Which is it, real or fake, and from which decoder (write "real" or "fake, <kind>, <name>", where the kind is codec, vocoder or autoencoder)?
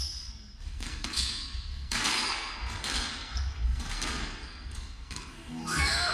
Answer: fake, codec, SNAC